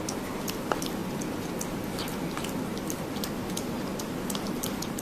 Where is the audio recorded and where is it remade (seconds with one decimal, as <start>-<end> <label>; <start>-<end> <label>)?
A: 0.0-5.0 recorded